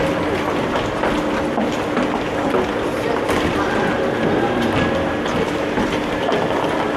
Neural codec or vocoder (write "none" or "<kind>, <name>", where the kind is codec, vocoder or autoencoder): none